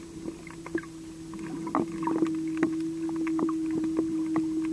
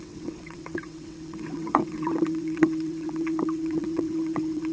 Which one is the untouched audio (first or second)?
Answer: first